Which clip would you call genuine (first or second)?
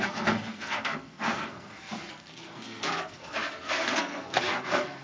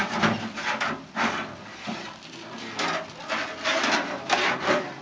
second